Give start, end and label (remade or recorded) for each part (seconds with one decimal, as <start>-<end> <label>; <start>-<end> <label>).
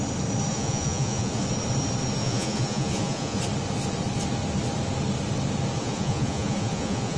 0.0-0.5 recorded; 0.5-1.4 remade; 1.4-2.2 recorded; 2.2-3.4 remade; 3.4-5.8 recorded; 5.8-7.2 remade